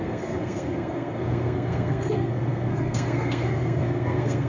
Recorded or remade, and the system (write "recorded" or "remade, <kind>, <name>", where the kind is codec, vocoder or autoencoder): remade, codec, SNAC